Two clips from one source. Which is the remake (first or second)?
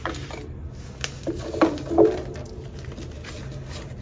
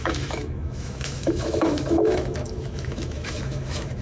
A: second